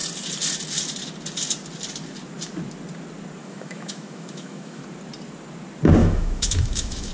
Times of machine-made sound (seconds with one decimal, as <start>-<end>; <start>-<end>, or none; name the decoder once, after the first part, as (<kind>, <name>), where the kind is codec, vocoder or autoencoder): 3.4-4.8 (autoencoder, DAC-VAE); 6.0-7.1